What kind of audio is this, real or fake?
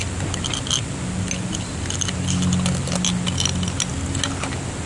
real